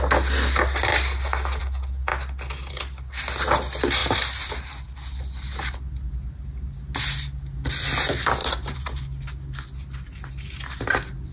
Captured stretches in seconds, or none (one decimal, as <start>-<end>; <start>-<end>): 0.0-4.0; 4.5-8.4; 9.0-11.3